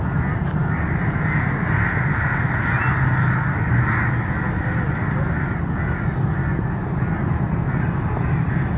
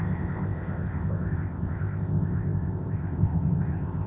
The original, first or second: first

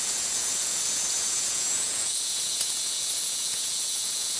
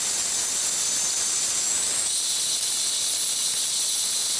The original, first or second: second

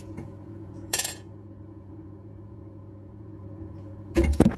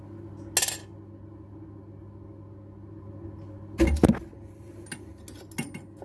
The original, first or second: second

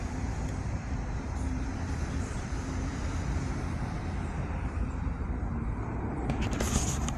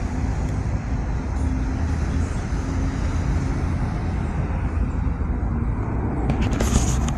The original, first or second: second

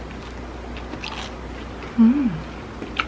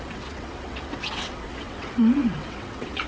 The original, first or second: first